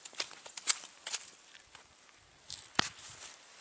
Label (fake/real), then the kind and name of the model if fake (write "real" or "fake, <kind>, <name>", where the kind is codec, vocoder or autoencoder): fake, vocoder, BigVGAN v2